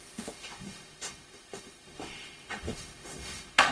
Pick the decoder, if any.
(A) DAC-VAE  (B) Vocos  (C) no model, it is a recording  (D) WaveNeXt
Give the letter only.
A